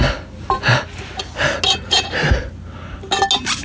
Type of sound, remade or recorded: recorded